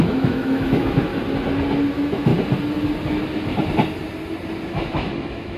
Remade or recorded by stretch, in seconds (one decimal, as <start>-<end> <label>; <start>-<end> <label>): 0.0-1.1 remade; 1.1-1.9 recorded; 1.9-2.3 remade; 2.3-4.7 recorded; 4.7-5.6 remade